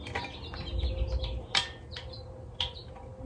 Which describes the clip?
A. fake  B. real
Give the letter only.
B